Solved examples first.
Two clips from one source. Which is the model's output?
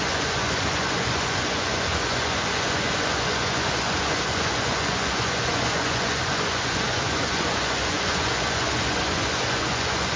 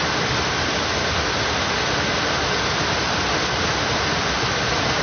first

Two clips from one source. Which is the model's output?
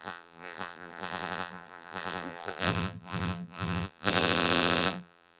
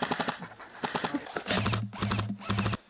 first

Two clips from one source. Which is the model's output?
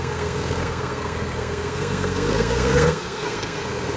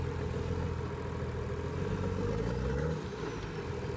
first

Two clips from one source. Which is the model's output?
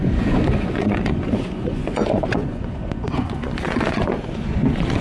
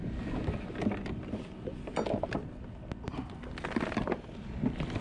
first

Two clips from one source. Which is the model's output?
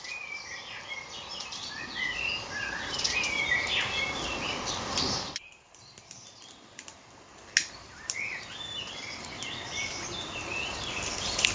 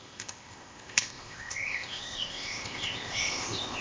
second